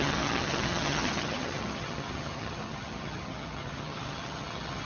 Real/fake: fake